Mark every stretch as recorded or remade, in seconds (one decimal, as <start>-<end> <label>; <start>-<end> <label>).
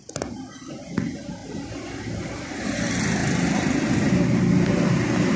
0.0-5.4 recorded